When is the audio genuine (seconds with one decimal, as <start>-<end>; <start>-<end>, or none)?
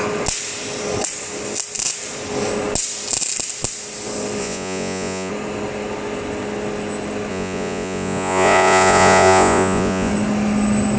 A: 0.0-4.4; 5.3-7.3; 10.1-11.0